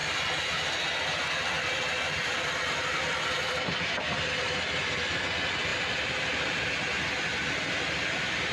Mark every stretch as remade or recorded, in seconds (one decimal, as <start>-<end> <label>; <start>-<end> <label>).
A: 0.0-8.5 recorded